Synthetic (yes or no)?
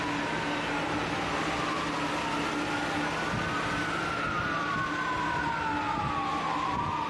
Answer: no